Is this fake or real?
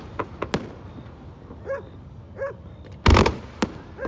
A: real